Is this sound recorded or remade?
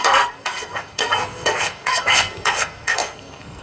remade